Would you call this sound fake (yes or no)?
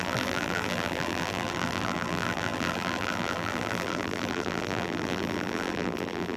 yes